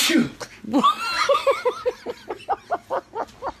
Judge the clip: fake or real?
real